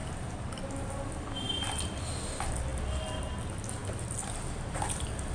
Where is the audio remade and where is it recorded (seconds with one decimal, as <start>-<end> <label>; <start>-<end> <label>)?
0.0-0.6 remade; 0.6-5.3 recorded